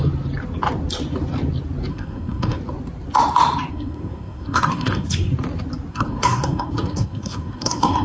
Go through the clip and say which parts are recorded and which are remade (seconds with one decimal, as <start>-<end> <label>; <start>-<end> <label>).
0.0-1.9 recorded; 1.9-2.6 remade; 2.6-3.7 recorded; 3.7-5.3 remade; 5.3-5.9 recorded; 5.9-8.0 remade